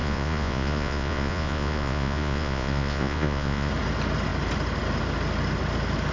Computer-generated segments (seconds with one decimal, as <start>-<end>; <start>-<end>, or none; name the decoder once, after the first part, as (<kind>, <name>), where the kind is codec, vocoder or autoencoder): 0.0-3.7 (vocoder, Vocos)